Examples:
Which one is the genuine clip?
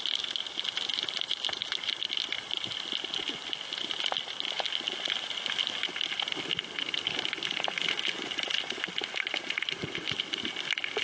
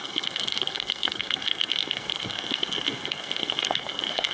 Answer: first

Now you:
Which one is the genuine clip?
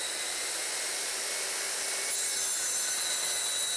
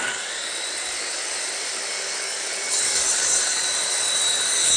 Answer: first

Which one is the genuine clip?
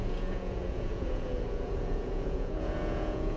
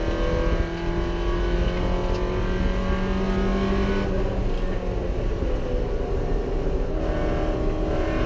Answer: second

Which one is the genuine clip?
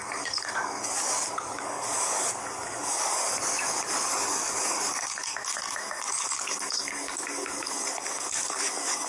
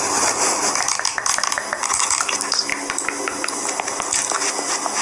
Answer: second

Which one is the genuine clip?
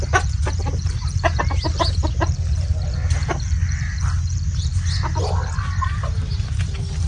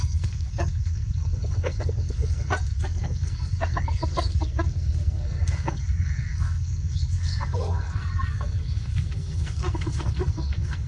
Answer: first